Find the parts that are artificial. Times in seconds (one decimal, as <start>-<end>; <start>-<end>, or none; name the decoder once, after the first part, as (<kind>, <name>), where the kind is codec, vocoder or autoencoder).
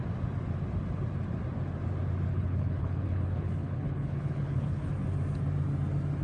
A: 2.3-4.9 (codec, HILCodec)